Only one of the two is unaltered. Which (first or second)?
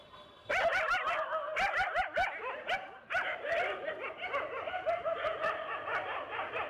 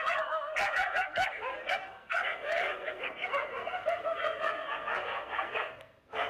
first